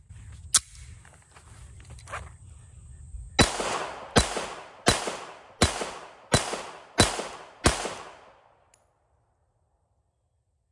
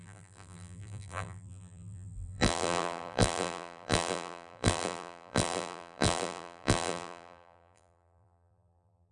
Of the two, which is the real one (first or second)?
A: first